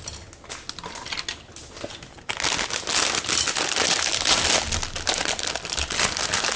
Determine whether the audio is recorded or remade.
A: recorded